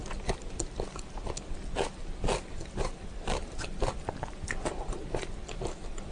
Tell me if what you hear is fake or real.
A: real